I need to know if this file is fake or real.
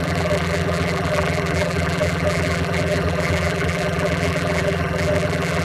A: fake